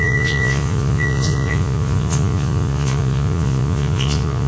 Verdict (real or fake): fake